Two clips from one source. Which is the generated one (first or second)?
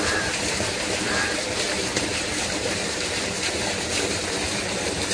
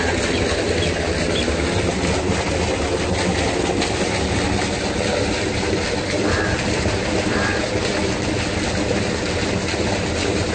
first